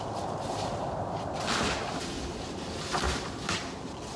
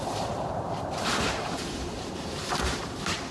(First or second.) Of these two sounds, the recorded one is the first